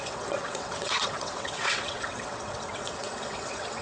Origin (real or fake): fake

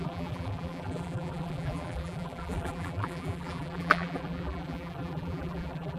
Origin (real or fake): fake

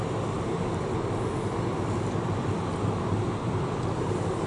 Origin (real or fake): fake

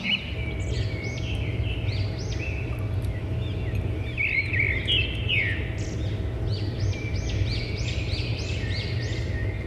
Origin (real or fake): real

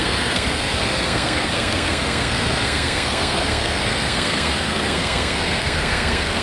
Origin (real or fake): fake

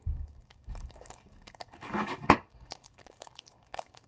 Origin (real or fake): fake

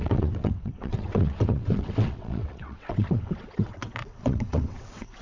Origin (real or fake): fake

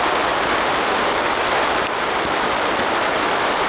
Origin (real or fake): real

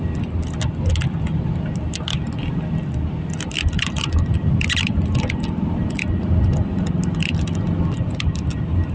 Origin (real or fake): real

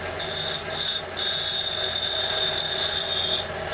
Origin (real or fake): real